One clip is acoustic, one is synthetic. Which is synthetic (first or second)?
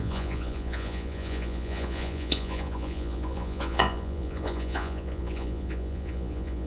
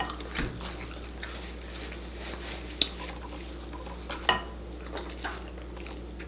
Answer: first